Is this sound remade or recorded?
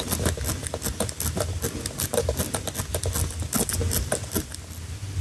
recorded